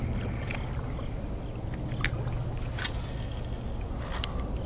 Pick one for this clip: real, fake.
real